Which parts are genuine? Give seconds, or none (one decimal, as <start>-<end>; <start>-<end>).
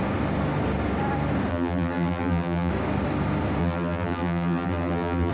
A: 0.0-1.5; 2.7-3.6